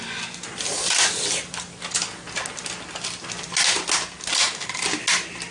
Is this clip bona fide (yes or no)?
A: yes